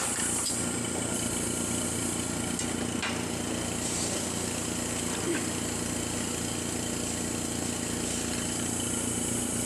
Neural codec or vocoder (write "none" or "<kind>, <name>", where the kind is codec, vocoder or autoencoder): none